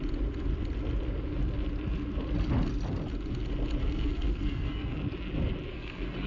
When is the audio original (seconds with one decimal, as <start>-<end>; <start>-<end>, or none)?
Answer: 0.0-3.8; 5.0-5.7